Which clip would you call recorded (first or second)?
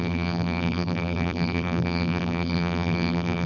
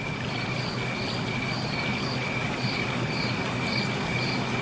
second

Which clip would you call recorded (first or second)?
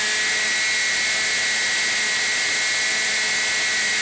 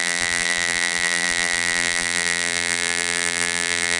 first